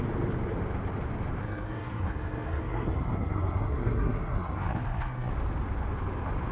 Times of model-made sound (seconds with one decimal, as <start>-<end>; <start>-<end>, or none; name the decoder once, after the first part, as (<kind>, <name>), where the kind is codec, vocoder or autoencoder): 1.4-5.3 (codec, SNAC)